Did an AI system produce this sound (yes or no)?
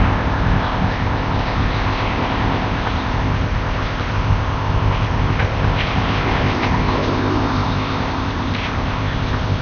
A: yes